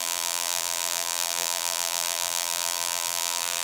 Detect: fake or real fake